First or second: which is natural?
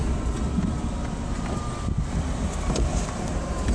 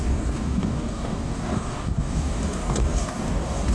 first